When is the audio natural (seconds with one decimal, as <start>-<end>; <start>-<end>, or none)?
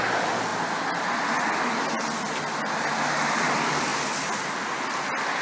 0.0-3.9; 4.5-5.4